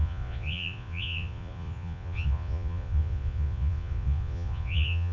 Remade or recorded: remade